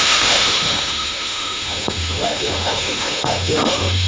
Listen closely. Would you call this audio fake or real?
fake